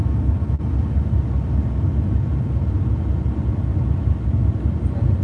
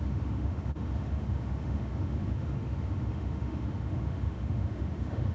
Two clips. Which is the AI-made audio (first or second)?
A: second